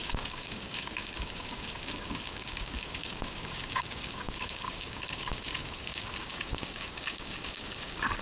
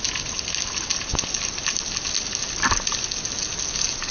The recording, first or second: second